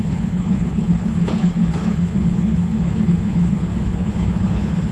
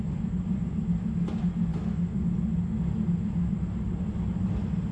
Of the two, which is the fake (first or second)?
first